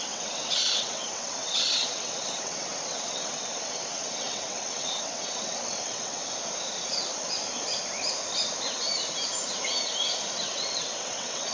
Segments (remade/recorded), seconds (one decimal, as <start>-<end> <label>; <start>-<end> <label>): 0.0-6.2 remade; 6.2-10.3 recorded; 10.3-11.5 remade